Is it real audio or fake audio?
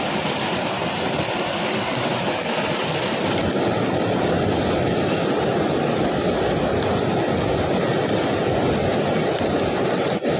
real